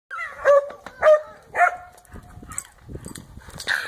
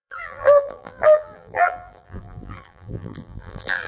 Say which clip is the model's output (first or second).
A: second